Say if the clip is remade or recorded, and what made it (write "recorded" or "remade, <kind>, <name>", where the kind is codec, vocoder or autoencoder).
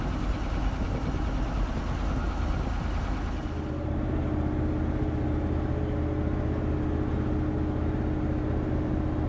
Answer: recorded